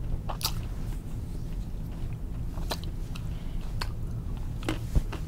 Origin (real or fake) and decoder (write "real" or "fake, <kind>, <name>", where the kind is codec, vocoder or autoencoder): real